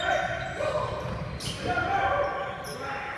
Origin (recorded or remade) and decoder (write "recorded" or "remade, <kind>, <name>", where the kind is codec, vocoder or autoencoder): recorded